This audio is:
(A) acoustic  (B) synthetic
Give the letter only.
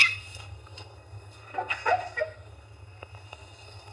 B